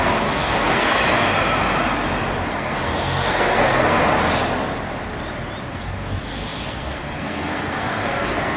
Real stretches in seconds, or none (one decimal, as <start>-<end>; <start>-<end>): 1.0-2.5; 4.0-5.7